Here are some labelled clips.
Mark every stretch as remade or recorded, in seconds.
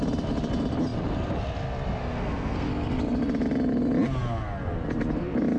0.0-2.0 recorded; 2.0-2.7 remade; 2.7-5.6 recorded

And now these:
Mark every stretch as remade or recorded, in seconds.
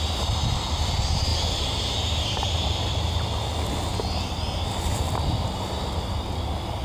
0.0-1.3 recorded; 1.3-2.7 remade; 2.7-6.8 recorded